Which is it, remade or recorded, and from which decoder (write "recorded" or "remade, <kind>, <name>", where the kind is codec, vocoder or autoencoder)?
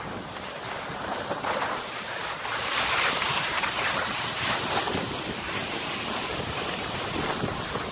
recorded